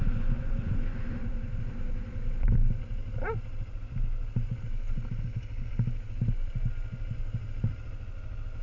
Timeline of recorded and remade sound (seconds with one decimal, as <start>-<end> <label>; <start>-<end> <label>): 0.0-0.9 recorded; 0.9-1.6 remade; 1.6-8.6 recorded